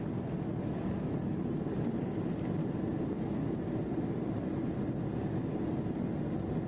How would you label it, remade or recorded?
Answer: recorded